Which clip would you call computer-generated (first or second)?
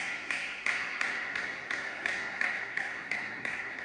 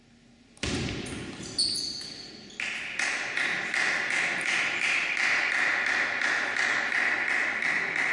first